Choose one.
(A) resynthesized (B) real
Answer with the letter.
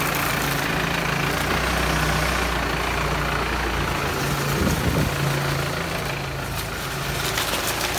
B